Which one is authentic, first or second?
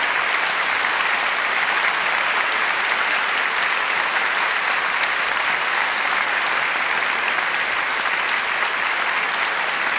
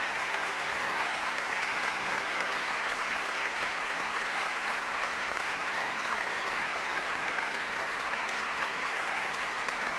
first